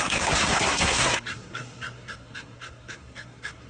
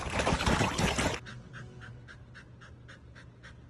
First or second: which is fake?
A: first